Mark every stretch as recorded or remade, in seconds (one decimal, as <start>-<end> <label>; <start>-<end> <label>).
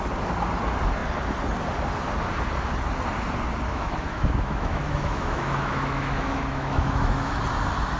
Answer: 0.0-3.7 recorded; 3.7-7.4 remade; 7.4-8.0 recorded